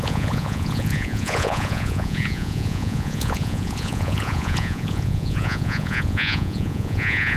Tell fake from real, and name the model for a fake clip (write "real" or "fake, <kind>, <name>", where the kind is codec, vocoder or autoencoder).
fake, vocoder, Vocos